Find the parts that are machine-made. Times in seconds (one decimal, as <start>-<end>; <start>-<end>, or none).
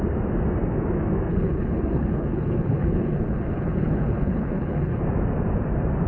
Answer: 1.3-5.0